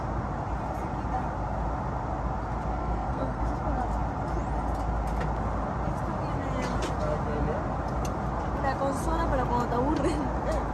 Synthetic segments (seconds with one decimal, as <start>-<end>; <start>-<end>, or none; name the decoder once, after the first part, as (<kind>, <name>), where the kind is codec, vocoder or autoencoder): 2.8-3.4 (codec, SNAC)